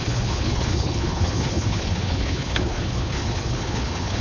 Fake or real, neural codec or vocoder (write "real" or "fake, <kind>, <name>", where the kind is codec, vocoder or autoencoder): fake, codec, HILCodec